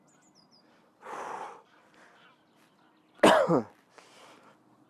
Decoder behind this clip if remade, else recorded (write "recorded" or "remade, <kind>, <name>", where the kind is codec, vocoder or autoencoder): recorded